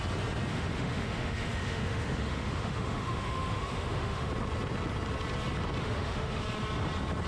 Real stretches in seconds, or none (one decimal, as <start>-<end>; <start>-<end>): 0.0-0.5; 4.3-5.8; 6.4-7.3